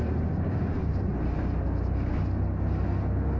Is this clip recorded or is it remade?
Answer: recorded